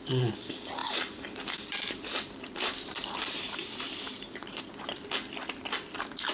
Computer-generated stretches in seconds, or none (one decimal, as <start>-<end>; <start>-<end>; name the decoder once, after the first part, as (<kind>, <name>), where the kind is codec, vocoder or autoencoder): 0.8-4.6 (vocoder, BigVGAN v2)